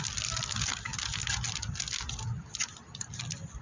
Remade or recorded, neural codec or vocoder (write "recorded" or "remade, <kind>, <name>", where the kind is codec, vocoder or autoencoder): recorded